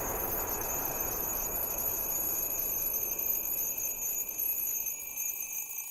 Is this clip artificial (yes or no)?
yes